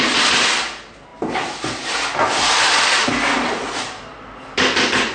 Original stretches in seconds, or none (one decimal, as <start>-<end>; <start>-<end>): 0.0-5.1